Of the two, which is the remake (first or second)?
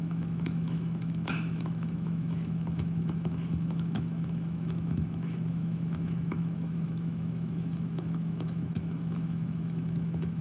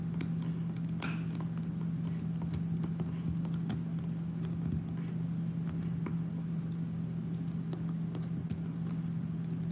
first